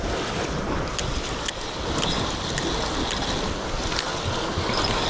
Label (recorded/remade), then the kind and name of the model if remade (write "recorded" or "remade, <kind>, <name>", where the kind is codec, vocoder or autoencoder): recorded